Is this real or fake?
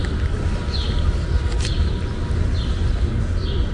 real